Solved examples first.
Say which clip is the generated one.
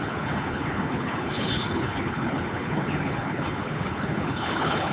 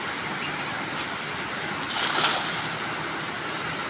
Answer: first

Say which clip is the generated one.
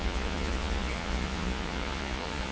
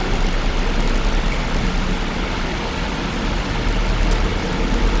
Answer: first